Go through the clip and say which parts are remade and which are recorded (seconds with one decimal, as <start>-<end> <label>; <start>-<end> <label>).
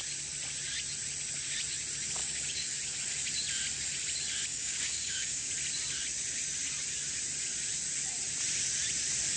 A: 0.0-2.2 recorded; 2.2-2.8 remade; 2.8-4.5 recorded; 4.5-5.5 remade; 5.5-9.4 recorded